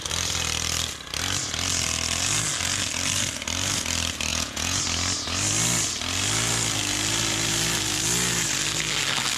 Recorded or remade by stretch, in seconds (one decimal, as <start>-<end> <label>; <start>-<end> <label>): 0.0-4.3 recorded; 4.3-4.8 remade; 4.8-9.4 recorded